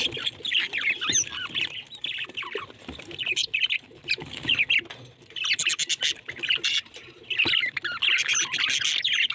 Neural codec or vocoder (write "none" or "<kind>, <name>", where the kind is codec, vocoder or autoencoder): none